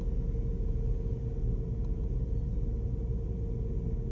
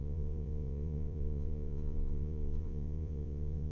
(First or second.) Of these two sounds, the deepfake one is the second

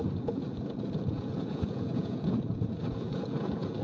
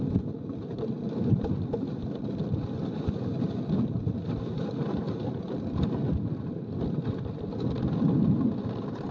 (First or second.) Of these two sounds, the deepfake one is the first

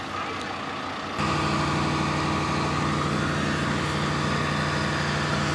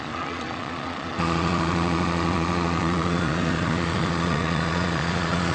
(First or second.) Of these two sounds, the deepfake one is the second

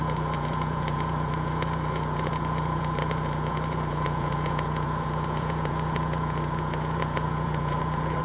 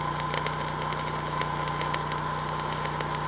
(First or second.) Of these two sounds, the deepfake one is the first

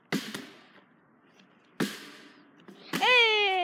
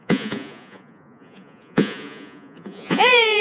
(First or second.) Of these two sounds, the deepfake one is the second